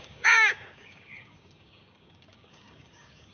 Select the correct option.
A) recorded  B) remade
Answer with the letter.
B